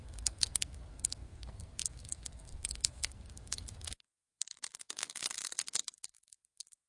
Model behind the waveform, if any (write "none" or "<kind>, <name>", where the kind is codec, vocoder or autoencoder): codec, SNAC